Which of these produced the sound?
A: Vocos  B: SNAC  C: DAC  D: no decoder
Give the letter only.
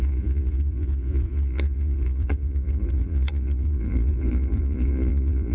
A